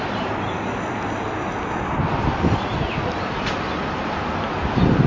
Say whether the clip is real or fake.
real